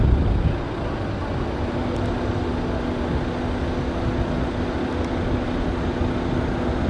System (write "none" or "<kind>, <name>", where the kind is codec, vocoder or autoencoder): none